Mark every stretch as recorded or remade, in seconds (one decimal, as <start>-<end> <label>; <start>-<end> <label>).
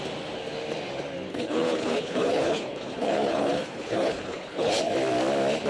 0.0-1.3 recorded; 1.3-4.7 remade; 4.7-5.7 recorded